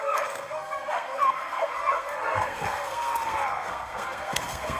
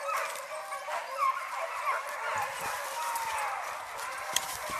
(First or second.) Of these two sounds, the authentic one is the second